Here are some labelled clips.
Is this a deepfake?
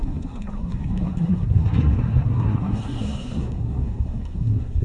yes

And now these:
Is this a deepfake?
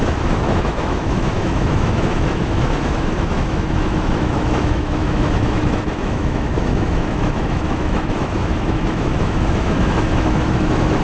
yes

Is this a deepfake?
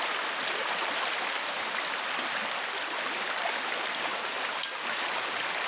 no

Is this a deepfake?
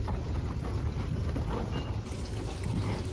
no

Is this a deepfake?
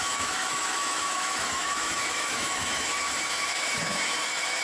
yes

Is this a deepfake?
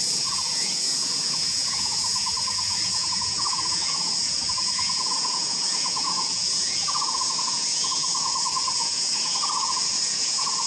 yes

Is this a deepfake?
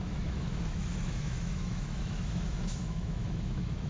yes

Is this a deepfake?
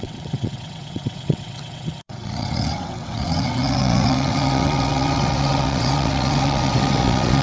yes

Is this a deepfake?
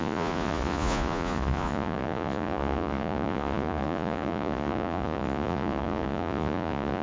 yes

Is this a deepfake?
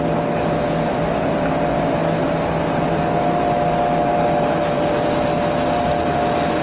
no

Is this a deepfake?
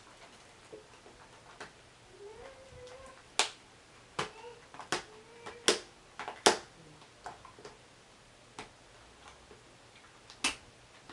no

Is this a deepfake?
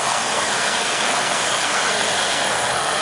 yes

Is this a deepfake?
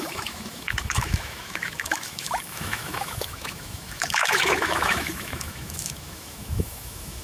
yes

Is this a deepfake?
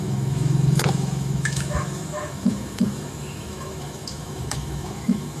yes